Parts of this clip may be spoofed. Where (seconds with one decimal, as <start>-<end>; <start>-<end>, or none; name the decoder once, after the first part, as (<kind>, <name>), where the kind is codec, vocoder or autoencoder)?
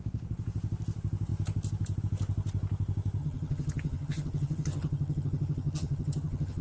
3.2-6.6 (vocoder, HiFi-GAN)